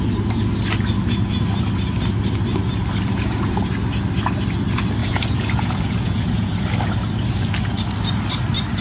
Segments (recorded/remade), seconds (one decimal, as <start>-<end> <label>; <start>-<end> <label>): 0.0-3.1 recorded; 3.1-3.7 remade; 3.7-5.0 recorded; 5.0-6.7 remade; 6.7-8.8 recorded